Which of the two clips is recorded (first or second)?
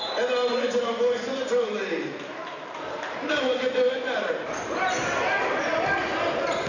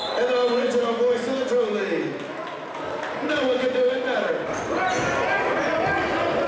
second